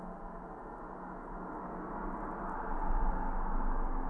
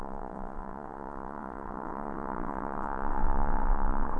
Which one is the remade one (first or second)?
second